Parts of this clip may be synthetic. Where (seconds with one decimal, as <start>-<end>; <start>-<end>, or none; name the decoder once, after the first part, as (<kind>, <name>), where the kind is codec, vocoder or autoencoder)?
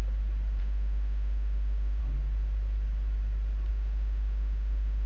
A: 0.6-2.0 (autoencoder, DAC-VAE); 3.7-5.1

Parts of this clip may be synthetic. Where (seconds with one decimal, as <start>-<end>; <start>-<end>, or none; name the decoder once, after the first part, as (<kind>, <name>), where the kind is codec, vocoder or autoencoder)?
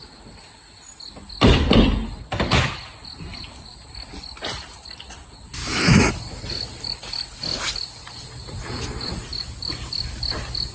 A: 5.6-6.1 (autoencoder, DAC-VAE)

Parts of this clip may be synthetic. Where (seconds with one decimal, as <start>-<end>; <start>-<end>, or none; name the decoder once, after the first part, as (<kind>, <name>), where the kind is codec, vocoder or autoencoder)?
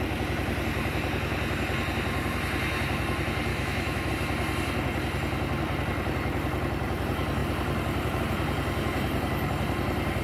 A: 3.5-4.1 (autoencoder, DAC-VAE)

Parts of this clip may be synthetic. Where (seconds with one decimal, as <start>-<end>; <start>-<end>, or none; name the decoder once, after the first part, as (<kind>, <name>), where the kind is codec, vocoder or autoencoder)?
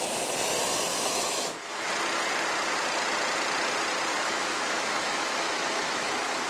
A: 0.9-1.9 (autoencoder, DAC-VAE); 4.1-6.5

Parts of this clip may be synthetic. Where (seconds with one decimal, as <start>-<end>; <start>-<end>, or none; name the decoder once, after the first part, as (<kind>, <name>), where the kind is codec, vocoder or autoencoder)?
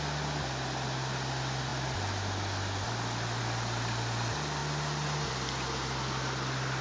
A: none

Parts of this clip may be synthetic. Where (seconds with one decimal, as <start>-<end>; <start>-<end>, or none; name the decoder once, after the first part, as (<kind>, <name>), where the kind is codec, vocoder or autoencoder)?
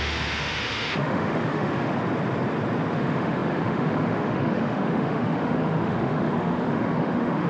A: 0.0-1.9 (autoencoder, DAC-VAE); 2.9-7.5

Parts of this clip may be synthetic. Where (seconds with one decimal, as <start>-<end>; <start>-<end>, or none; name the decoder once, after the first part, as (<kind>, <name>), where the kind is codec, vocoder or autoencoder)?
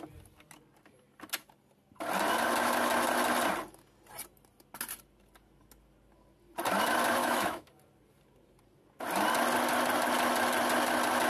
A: 7.2-7.7 (autoencoder, DAC-VAE)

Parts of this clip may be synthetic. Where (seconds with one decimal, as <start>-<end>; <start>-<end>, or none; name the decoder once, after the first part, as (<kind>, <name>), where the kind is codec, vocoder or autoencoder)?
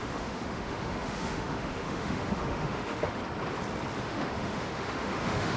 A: 0.0-3.2 (autoencoder, DAC-VAE); 4.0-5.6